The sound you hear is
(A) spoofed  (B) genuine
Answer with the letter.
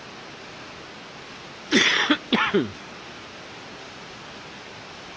B